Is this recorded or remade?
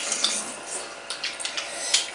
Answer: recorded